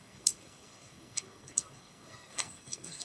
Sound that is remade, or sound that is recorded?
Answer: remade